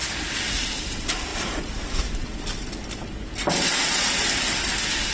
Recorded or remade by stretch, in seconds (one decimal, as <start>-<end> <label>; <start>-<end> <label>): 0.0-5.1 recorded